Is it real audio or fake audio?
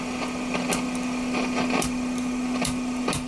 real